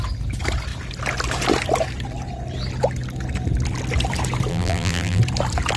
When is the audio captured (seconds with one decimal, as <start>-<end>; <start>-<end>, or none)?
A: 0.0-4.5; 5.2-5.8